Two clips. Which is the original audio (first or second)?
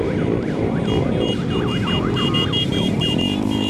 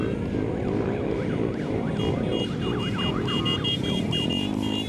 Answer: second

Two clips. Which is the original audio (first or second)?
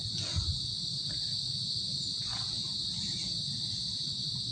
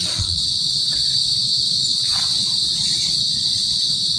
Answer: first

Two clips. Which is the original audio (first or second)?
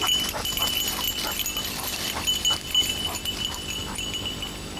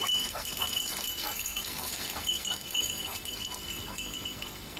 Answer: first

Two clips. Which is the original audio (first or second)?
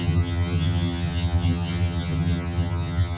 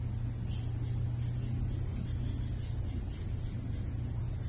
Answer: second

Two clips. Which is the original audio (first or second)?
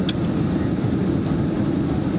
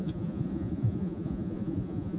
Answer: first